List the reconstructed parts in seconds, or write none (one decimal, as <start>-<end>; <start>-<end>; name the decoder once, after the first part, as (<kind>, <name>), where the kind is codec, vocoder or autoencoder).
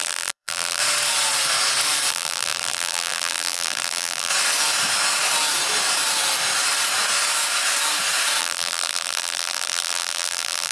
0.0-0.8 (vocoder, BigVGAN v2); 2.1-4.3; 8.4-10.7